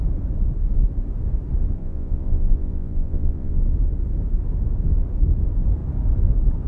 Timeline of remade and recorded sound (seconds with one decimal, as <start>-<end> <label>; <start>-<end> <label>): 0.0-1.8 recorded; 1.8-3.6 remade; 3.6-6.7 recorded